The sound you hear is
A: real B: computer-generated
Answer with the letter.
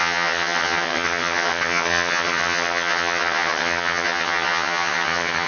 B